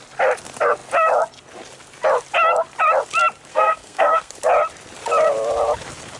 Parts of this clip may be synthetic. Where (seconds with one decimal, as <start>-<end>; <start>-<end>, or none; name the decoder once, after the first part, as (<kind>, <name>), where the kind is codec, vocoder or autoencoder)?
3.5-4.3 (codec, SNAC)